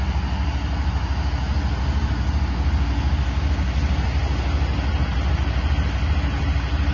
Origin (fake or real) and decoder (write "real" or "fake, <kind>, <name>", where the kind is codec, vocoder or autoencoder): real